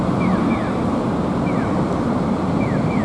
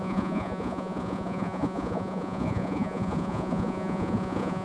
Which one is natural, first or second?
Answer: first